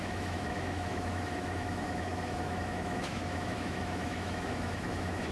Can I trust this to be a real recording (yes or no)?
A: no